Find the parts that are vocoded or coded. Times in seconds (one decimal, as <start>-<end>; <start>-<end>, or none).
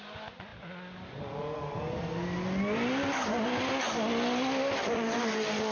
none